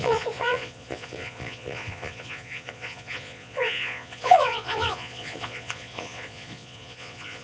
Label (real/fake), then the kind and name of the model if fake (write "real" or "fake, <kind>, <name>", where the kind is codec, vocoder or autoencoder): fake, vocoder, Vocos